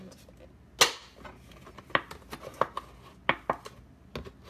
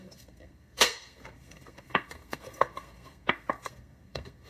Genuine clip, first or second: first